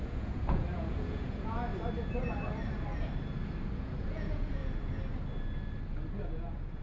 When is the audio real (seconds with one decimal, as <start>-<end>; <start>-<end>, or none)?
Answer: 1.7-3.7; 4.6-6.1